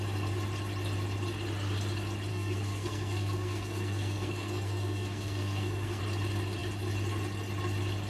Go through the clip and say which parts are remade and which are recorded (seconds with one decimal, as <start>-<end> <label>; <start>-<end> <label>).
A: 0.0-2.3 recorded; 2.3-6.0 remade; 6.0-8.1 recorded